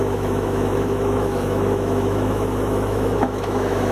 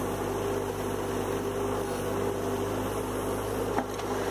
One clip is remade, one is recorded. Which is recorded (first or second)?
second